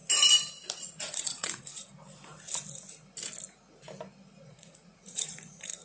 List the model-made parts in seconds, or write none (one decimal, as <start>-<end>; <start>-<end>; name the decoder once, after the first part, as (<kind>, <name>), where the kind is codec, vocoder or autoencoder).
0.8-1.9 (vocoder, Vocos); 4.5-5.8